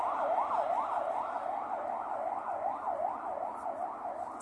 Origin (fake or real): real